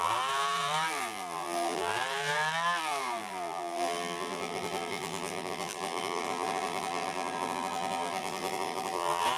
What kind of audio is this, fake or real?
fake